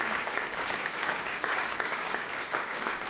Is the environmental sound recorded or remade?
remade